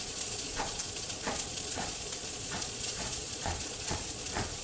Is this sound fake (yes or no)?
yes